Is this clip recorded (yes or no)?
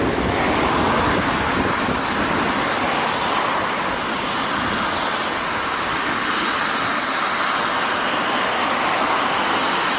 yes